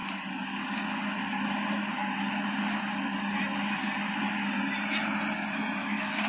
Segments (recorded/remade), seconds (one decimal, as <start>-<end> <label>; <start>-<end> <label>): 0.0-5.8 recorded; 5.8-6.3 remade